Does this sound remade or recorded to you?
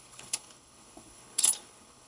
remade